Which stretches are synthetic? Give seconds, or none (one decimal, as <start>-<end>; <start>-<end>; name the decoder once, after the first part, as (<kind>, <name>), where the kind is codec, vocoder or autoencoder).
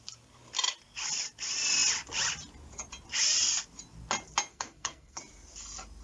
4.5-5.2 (codec, SNAC)